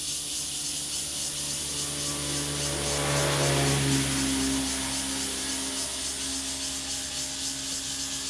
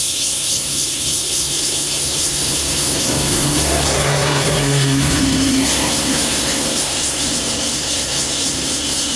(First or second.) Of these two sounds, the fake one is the second